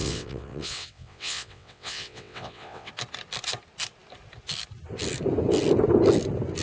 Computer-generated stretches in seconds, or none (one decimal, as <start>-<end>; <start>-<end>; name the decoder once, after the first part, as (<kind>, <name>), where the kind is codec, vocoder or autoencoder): 0.0-2.9 (vocoder, WaveNeXt)